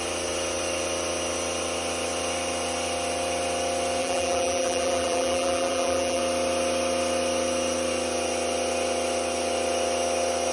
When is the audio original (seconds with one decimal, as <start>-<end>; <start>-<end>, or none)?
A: 0.0-4.0; 6.2-10.5